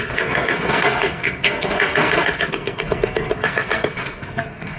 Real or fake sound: fake